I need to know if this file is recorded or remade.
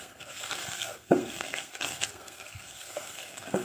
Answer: remade